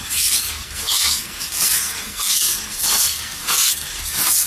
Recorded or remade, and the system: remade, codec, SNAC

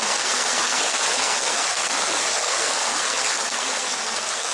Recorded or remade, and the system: remade, codec, SNAC